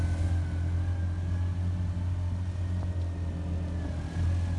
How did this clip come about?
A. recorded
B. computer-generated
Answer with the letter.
A